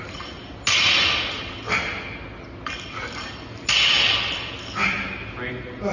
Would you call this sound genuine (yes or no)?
yes